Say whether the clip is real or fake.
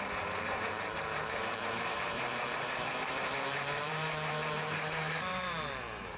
fake